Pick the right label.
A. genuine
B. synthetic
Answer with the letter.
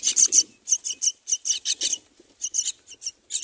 A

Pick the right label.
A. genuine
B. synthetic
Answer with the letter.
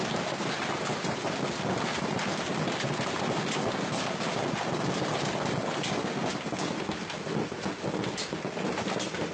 A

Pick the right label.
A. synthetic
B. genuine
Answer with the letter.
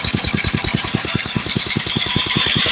A